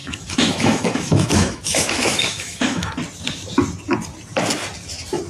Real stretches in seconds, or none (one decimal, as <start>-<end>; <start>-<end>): 2.9-5.3